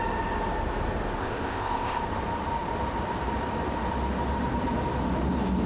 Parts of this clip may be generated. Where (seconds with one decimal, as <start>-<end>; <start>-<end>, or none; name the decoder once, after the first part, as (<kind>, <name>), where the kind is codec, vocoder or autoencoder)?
1.2-2.0 (codec, ZipCodec)